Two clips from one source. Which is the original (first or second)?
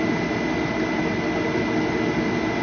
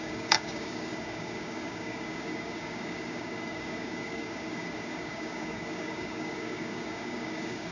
first